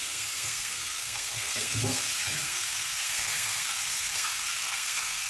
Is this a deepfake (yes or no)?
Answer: yes